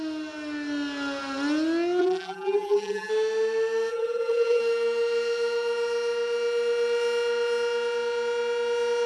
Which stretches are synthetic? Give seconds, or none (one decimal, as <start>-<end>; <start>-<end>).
2.0-3.1; 3.9-4.6